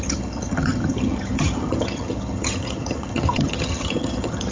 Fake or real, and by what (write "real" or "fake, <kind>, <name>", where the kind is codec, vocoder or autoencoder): fake, vocoder, HiFi-GAN